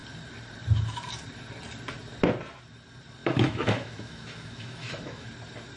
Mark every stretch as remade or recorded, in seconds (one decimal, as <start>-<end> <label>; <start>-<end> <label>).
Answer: 0.0-3.2 recorded; 3.2-5.3 remade; 5.3-5.8 recorded